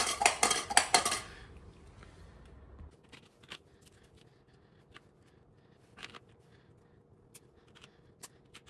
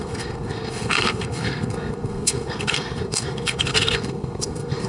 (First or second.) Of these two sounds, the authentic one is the first